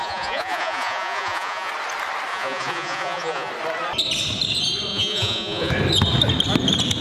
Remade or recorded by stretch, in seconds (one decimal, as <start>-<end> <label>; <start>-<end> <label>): 0.0-1.7 remade; 1.7-2.3 recorded; 2.3-3.5 remade; 3.5-4.9 recorded; 4.9-5.7 remade; 5.7-7.0 recorded